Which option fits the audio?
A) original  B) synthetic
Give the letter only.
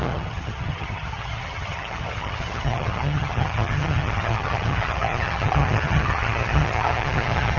B